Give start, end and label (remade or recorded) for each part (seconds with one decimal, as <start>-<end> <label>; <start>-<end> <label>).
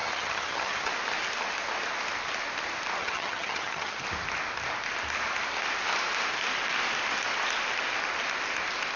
0.0-0.9 remade; 0.9-3.0 recorded; 3.0-4.0 remade; 4.0-9.0 recorded